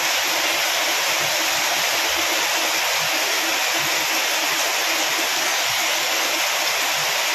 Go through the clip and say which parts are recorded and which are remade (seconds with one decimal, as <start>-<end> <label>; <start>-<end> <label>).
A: 0.0-5.3 recorded; 5.3-6.4 remade; 6.4-7.3 recorded